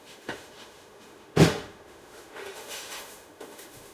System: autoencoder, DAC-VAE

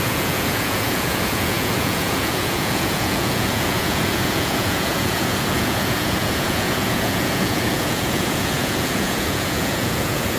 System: vocoder, Vocos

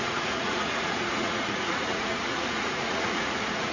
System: vocoder, Vocos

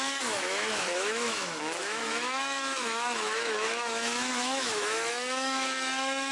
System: autoencoder, DAC-VAE